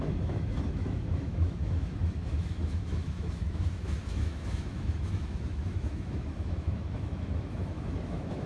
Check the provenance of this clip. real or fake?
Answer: fake